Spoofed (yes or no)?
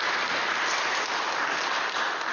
no